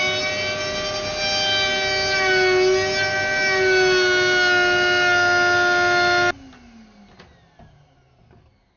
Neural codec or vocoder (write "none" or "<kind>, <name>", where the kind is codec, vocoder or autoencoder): none